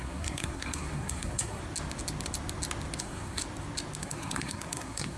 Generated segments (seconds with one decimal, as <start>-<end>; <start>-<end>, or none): 0.0-1.6; 3.0-3.4; 4.0-5.2